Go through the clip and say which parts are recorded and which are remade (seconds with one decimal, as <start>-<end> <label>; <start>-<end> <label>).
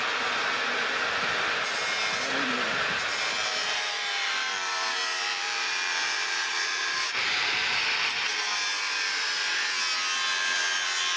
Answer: 0.0-3.5 recorded; 3.5-7.8 remade; 7.8-11.2 recorded